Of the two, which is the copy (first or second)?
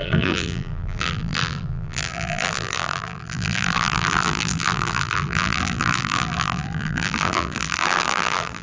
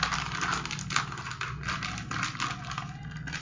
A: first